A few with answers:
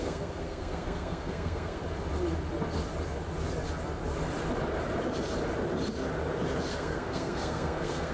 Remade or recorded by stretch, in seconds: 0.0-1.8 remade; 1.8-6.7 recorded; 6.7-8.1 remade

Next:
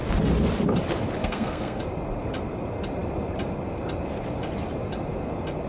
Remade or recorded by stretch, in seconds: 0.0-1.2 recorded; 1.2-1.8 remade; 1.8-5.7 recorded

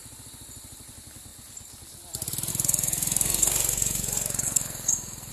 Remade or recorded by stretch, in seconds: 0.0-2.5 recorded; 2.5-5.3 remade

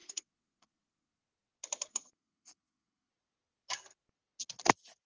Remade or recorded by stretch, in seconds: 0.0-1.2 remade; 1.2-1.9 recorded; 1.9-3.1 remade; 3.1-5.1 recorded

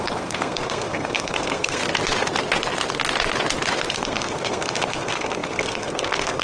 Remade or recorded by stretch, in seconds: 0.0-1.8 remade; 1.8-3.9 recorded; 3.9-6.4 remade